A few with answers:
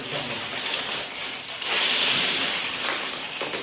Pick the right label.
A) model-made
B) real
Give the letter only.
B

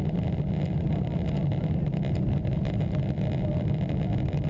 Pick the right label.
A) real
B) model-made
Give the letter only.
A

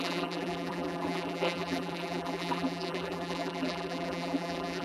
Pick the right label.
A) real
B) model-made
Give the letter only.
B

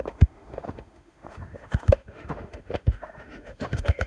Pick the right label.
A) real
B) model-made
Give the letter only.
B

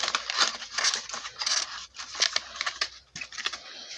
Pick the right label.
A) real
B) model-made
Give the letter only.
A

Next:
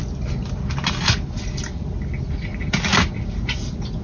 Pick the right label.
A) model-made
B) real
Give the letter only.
B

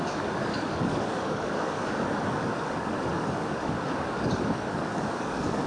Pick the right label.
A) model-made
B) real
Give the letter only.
A